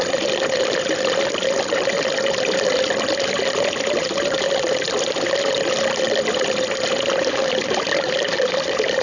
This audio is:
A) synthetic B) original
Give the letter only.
B